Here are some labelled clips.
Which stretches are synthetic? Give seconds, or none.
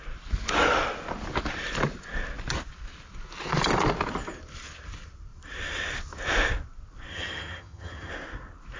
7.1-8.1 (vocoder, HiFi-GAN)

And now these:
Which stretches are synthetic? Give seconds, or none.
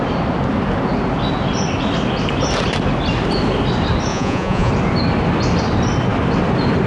4.1-4.7 (vocoder, Vocos)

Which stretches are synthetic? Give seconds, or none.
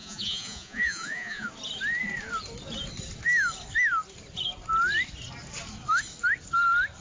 0.0-1.5 (vocoder, Vocos)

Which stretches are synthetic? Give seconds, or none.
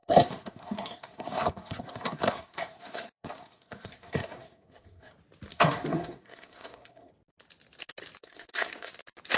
0.0-5.1 (codec, SNAC); 5.5-7.1; 8.2-8.9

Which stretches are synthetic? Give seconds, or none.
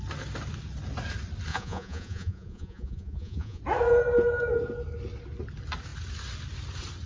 1.5-3.6 (vocoder, Vocos)